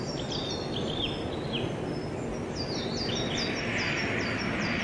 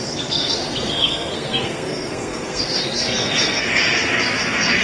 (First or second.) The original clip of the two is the first